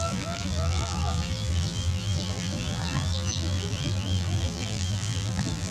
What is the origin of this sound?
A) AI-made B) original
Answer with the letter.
A